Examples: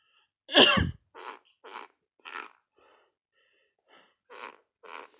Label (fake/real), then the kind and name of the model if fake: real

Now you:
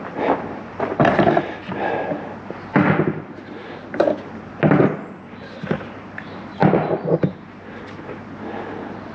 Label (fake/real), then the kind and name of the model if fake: real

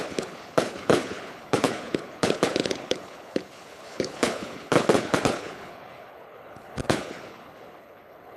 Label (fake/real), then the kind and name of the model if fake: fake, codec, HILCodec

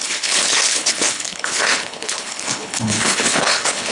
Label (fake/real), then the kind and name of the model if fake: fake, codec, HILCodec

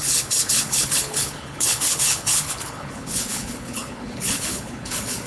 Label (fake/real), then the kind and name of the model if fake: fake, codec, HILCodec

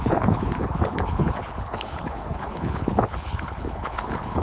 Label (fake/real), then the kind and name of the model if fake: fake, codec, HILCodec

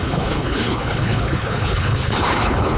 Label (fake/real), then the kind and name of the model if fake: fake, codec, HILCodec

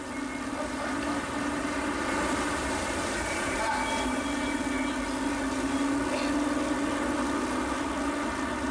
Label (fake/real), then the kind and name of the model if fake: real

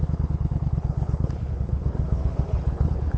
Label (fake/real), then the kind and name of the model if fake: fake, codec, HILCodec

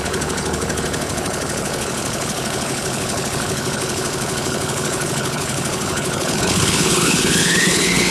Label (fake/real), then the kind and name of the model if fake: fake, codec, HILCodec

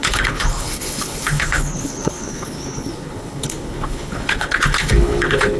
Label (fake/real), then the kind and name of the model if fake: fake, codec, HILCodec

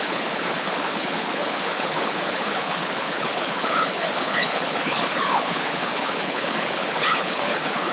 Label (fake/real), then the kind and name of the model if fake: fake, codec, HILCodec